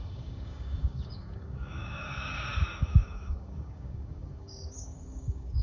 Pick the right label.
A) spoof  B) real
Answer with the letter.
A